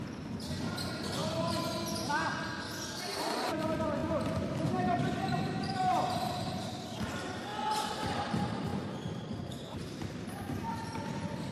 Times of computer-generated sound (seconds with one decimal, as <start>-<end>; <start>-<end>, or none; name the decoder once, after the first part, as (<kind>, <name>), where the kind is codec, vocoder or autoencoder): 0.0-1.2 (vocoder, BigVGAN v2); 3.0-4.0; 5.0-7.5; 8.2-11.5